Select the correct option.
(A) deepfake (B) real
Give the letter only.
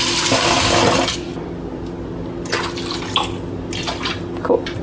B